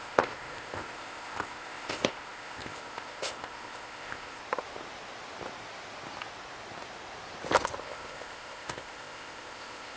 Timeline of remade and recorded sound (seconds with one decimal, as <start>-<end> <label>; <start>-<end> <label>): 0.0-4.4 remade; 4.4-7.8 recorded; 7.8-10.0 remade

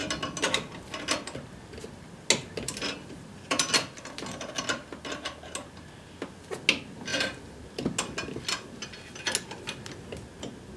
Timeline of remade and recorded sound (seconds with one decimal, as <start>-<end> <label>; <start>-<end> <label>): 0.0-3.0 recorded; 3.0-3.7 remade; 3.7-10.8 recorded

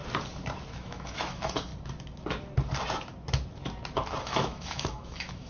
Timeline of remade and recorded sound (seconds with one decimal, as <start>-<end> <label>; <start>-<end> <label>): 0.0-0.7 recorded; 0.7-1.7 remade; 1.7-4.2 recorded; 4.2-5.5 remade

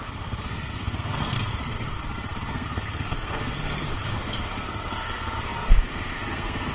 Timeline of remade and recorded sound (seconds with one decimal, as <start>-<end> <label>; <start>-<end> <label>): 0.0-2.0 remade; 2.0-2.5 recorded; 2.5-6.7 remade

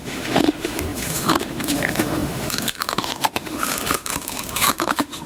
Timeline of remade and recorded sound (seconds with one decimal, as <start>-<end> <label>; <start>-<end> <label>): 0.0-5.3 remade

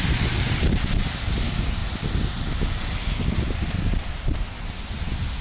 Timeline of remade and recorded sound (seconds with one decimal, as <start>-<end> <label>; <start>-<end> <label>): 0.0-5.4 recorded